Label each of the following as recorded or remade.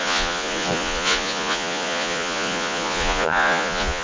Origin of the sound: remade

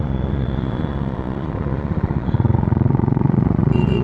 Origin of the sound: remade